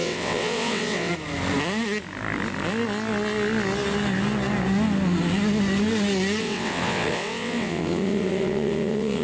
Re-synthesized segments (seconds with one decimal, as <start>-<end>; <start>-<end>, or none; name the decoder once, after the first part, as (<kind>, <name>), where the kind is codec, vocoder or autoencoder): 0.0-1.1 (vocoder, WaveNeXt); 6.4-9.2